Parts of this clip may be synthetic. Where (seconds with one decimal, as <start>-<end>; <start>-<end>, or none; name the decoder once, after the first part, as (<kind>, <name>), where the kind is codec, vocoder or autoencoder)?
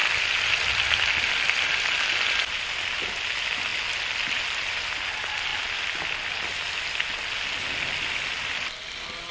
none